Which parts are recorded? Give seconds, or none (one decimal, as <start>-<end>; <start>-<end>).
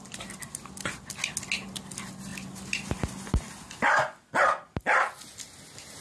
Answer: 0.0-6.0